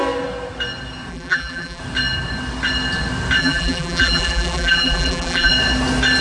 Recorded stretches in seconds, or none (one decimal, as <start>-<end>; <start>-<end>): 0.0-1.1; 1.8-3.4; 5.5-6.2